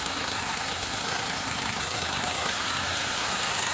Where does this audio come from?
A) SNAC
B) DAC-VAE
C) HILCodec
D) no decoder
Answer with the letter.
A